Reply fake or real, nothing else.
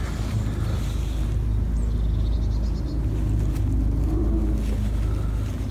real